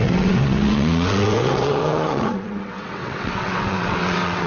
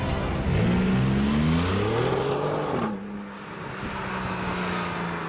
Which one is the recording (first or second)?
second